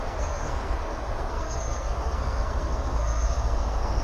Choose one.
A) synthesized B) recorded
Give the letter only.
A